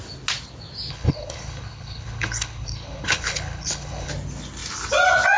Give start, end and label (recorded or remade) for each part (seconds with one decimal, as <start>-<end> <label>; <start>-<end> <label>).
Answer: 0.0-0.9 recorded; 0.9-4.1 remade; 4.1-5.4 recorded